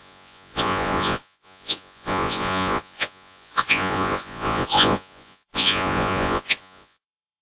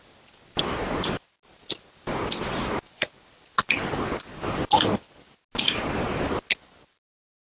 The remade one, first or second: first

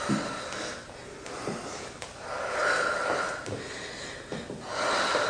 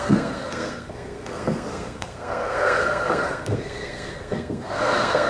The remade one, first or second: second